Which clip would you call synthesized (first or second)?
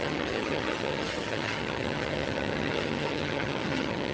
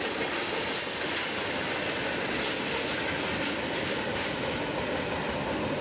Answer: first